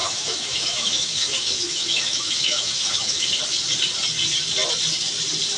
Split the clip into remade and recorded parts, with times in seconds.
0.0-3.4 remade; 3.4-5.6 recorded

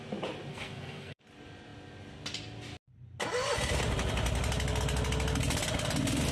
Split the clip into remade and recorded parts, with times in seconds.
0.0-0.5 recorded; 0.5-1.2 remade; 1.2-6.3 recorded

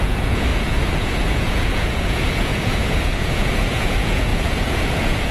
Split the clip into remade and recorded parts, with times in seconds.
0.0-5.3 remade